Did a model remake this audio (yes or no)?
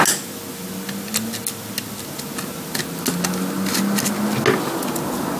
no